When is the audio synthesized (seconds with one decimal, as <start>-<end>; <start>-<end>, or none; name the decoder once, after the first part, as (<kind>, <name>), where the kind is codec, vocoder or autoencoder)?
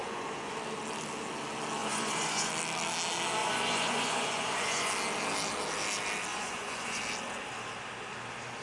0.0-0.5 (vocoder, Vocos); 1.8-2.5; 3.4-4.9; 6.3-7.0